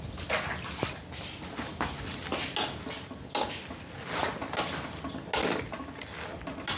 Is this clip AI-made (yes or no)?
no